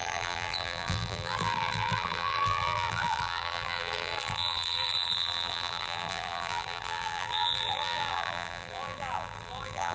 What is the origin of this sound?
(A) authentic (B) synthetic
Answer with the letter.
B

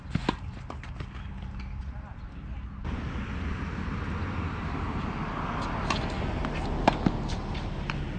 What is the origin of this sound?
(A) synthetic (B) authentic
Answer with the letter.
B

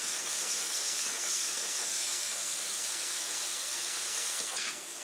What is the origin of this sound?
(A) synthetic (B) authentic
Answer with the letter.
A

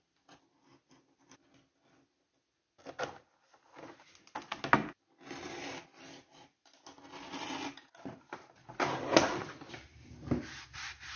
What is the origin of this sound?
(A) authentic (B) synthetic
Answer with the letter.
A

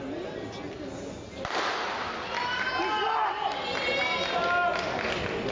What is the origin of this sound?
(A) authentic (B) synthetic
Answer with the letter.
A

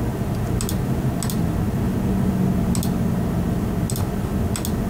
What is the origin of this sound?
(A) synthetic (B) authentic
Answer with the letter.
B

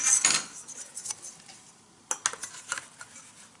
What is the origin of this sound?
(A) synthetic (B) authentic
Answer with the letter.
B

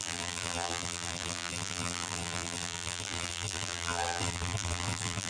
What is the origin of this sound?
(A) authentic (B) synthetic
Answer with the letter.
B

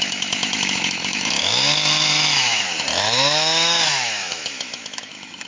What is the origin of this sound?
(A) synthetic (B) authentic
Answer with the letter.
A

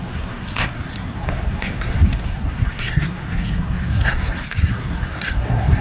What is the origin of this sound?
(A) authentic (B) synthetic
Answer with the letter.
B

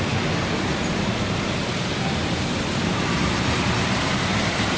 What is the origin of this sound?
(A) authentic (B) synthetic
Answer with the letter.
B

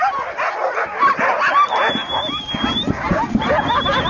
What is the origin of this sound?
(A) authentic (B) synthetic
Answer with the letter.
A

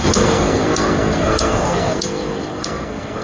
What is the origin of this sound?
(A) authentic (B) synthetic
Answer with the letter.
B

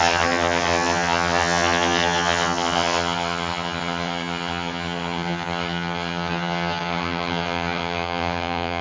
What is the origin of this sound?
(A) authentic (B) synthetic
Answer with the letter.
B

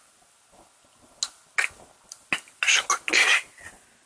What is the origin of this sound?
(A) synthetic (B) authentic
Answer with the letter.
B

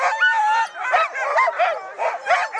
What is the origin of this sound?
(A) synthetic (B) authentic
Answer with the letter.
B